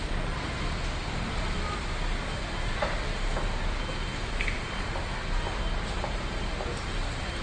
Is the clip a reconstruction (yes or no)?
no